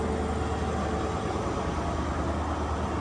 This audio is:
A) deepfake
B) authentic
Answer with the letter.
B